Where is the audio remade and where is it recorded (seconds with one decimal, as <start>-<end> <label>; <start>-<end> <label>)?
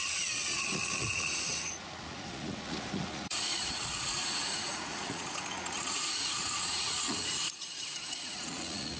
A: 0.0-9.0 remade